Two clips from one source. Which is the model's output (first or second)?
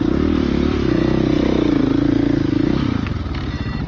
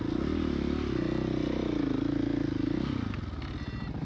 first